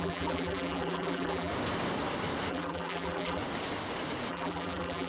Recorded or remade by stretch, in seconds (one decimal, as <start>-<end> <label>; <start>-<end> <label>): 0.0-1.5 remade; 1.5-2.5 recorded; 2.5-3.4 remade; 3.4-4.3 recorded; 4.3-5.1 remade